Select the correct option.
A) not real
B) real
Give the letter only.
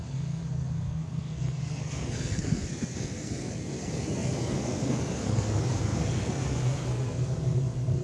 A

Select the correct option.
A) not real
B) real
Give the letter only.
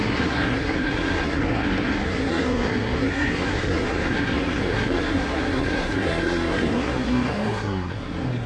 A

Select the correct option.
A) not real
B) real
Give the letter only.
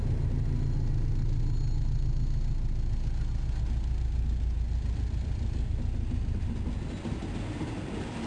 B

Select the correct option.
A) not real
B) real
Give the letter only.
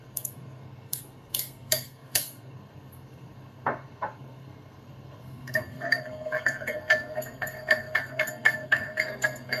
A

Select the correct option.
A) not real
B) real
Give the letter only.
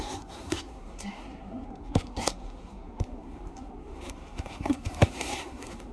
A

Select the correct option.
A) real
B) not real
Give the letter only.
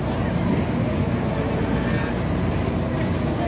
A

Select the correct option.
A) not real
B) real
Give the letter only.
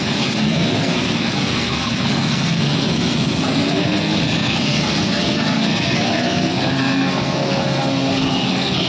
A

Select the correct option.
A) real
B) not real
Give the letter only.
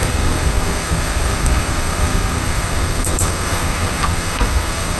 B